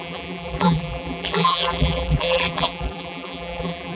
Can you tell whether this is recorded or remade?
remade